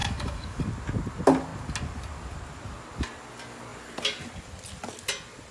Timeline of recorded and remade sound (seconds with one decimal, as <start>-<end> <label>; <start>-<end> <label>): 0.0-0.6 remade; 0.6-5.5 recorded